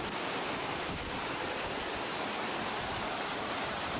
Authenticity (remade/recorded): recorded